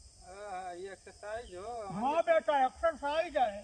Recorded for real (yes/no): no